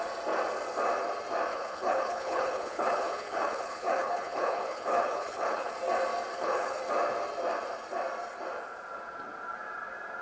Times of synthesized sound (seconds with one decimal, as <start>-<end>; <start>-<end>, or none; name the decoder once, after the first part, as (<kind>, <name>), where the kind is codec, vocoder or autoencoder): 1.5-5.7 (codec, HILCodec); 6.3-6.8